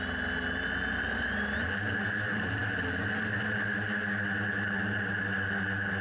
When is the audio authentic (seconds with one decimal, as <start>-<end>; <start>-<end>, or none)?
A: 0.0-6.0